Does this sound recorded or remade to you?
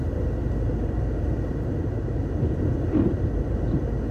remade